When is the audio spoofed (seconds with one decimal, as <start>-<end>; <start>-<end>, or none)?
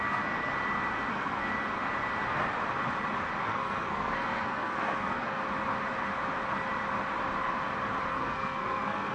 0.0-0.5; 1.1-1.5; 3.4-5.4; 8.1-9.1